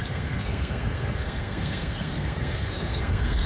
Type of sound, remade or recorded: remade